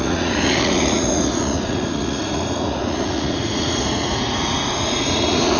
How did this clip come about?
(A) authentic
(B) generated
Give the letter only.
B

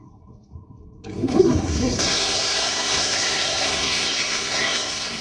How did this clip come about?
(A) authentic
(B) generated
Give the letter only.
B